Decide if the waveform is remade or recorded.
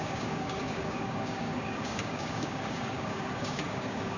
remade